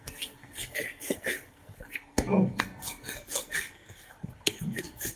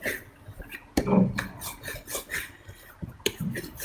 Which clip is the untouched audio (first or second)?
second